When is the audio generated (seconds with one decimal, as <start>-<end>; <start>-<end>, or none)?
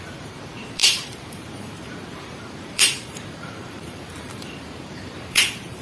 0.0-5.8